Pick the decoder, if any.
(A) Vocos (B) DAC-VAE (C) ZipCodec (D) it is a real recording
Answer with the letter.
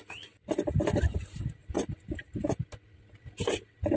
D